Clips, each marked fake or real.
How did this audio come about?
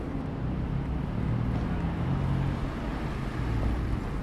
real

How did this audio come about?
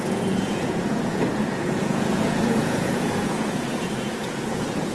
fake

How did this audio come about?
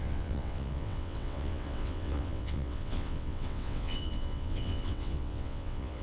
fake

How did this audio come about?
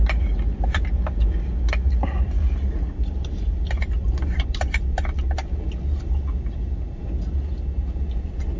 real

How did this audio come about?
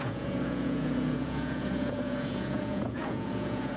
fake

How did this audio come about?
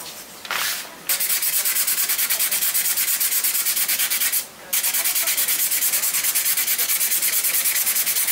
real